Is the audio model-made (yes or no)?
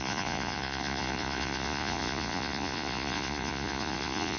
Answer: yes